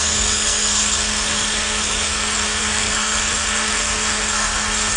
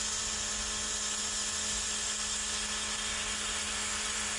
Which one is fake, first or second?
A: first